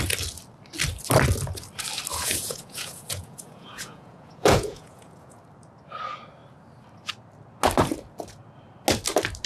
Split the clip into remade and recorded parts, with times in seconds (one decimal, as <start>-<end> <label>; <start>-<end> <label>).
0.0-2.1 recorded; 2.1-5.4 remade; 5.4-9.5 recorded